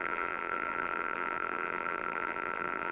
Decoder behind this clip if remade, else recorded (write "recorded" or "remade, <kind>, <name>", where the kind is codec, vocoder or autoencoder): remade, vocoder, BigVGAN v2